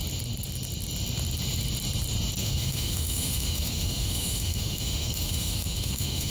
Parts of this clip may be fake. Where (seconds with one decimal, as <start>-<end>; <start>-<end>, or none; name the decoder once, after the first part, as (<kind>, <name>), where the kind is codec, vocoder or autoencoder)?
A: 2.4-6.3 (autoencoder, DAC-VAE)

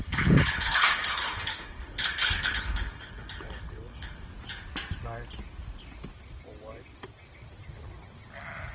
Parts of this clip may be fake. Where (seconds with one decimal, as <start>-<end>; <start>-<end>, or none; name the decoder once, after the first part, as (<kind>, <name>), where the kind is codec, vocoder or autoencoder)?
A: 0.0-4.3 (codec, HILCodec)